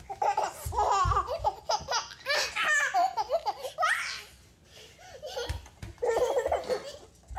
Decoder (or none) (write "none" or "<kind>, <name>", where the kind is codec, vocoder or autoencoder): none